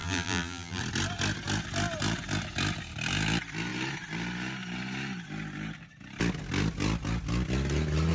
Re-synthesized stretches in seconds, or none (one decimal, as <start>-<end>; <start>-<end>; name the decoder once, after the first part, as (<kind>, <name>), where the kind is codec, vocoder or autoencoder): 0.0-0.8 (vocoder, BigVGAN v2)